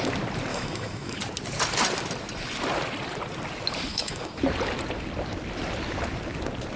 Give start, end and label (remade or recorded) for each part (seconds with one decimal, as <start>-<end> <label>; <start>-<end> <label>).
0.0-0.5 recorded; 0.5-1.2 remade; 1.2-3.9 recorded; 3.9-4.4 remade; 4.4-6.8 recorded